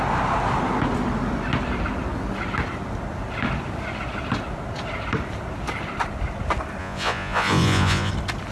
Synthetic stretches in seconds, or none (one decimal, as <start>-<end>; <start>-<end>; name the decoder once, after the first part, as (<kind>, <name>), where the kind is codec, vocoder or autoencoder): 6.8-8.1 (vocoder, Vocos)